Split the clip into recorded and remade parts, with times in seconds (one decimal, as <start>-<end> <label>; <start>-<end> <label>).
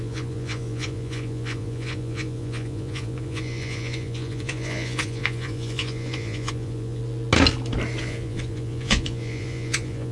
0.0-7.0 remade; 7.0-8.0 recorded; 8.0-10.1 remade